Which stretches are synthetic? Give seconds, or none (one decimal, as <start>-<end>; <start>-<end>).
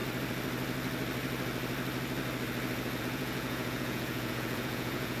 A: 3.0-5.2